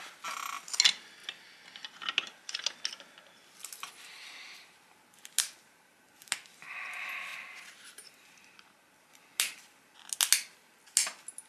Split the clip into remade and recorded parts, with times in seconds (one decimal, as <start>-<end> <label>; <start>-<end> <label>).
0.0-11.5 recorded